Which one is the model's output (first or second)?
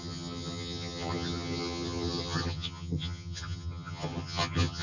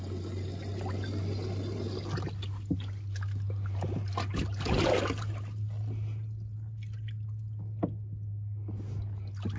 first